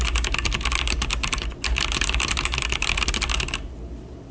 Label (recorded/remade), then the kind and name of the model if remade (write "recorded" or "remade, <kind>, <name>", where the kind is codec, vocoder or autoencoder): recorded